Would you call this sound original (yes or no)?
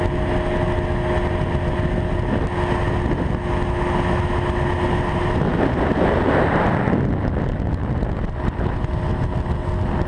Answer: yes